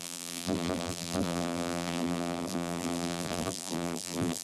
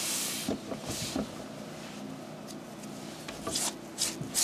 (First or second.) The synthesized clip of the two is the first